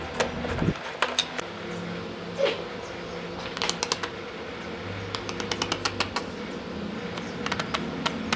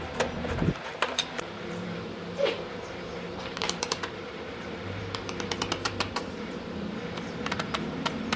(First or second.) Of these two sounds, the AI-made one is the second